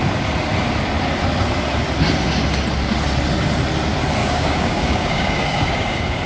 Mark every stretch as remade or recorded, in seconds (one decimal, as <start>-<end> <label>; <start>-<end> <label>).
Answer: 0.0-4.2 recorded; 4.2-6.3 remade